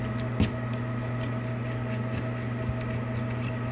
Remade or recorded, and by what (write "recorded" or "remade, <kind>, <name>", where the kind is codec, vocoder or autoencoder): recorded